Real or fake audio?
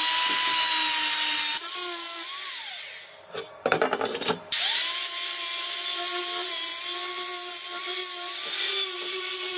real